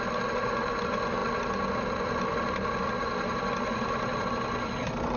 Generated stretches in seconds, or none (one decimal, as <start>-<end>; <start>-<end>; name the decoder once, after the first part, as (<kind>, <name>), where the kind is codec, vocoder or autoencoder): none